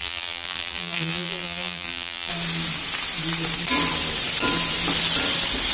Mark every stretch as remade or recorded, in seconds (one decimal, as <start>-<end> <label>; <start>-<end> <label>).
0.0-2.3 remade; 2.3-5.7 recorded